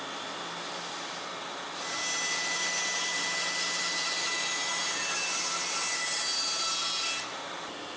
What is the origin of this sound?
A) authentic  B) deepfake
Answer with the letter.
A